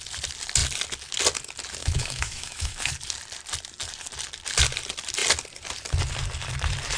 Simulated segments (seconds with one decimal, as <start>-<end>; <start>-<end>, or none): 1.8-2.9